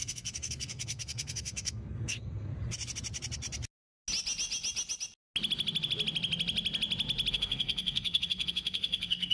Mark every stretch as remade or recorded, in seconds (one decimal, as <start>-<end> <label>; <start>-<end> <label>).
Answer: 0.0-2.5 remade; 2.5-7.3 recorded; 7.3-9.3 remade